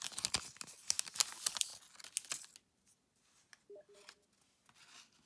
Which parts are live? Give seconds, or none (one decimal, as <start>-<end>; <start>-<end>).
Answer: 0.0-5.3